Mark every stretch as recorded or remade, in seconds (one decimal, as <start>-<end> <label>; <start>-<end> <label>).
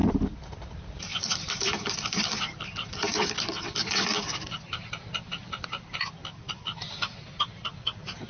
0.0-1.1 recorded; 1.1-6.0 remade; 6.0-8.3 recorded